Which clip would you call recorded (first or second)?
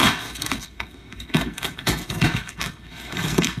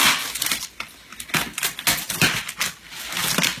second